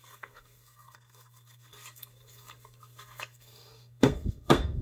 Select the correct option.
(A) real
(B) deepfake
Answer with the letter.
B